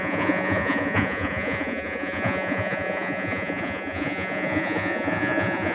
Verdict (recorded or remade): remade